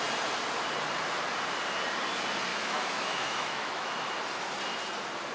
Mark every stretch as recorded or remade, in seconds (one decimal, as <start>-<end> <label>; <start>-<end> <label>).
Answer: 0.0-2.5 recorded; 2.5-4.1 remade; 4.1-5.3 recorded